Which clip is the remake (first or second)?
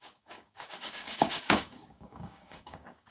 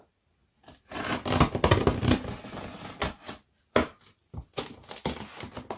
first